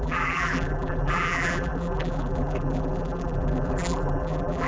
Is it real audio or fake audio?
fake